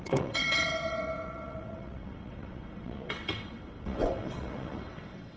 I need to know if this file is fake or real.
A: fake